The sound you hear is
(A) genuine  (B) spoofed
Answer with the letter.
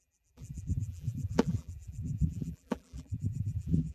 B